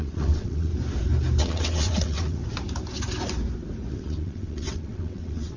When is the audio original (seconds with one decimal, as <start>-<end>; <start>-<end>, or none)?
0.7-1.4; 2.4-3.9